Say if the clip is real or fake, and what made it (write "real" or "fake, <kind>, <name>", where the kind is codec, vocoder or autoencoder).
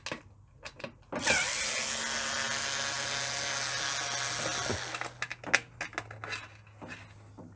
real